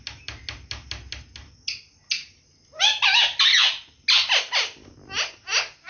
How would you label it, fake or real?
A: real